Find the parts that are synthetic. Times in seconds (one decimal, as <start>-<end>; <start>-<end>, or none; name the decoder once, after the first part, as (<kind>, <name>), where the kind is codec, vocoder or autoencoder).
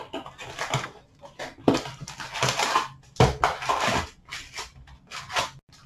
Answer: none